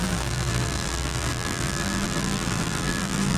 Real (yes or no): no